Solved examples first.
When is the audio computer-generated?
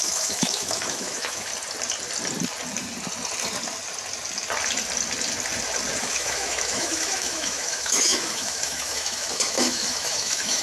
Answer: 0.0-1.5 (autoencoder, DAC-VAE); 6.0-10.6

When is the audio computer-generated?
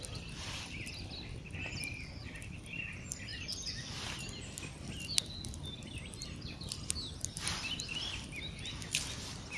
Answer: none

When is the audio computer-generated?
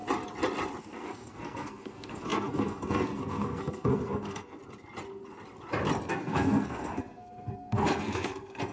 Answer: 0.8-4.6 (codec, SNAC); 6.1-8.7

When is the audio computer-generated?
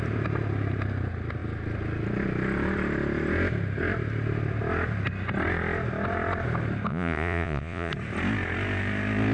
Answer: 6.9-7.9 (vocoder, Vocos)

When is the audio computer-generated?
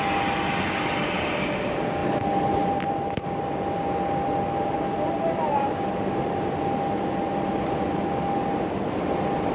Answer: none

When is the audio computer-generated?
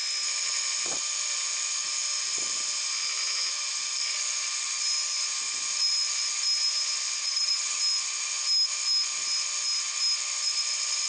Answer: 7.2-7.8 (vocoder, HiFi-GAN)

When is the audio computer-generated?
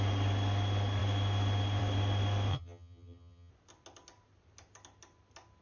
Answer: 2.5-3.5 (vocoder, HiFi-GAN)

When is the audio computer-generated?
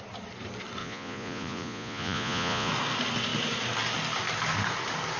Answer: 0.8-2.7 (vocoder, Vocos)